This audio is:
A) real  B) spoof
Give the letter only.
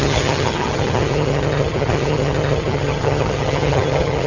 B